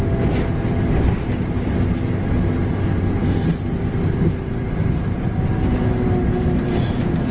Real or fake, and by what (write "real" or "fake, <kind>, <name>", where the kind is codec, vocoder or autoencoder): real